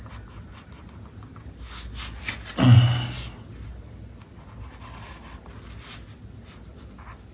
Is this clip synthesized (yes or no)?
no